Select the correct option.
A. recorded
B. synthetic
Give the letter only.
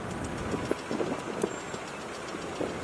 A